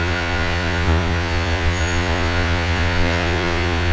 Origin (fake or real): fake